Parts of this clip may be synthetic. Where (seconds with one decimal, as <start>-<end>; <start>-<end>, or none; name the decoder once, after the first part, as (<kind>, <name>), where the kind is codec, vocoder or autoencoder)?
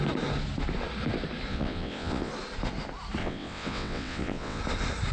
1.5-2.3 (vocoder, WaveNeXt); 3.2-4.6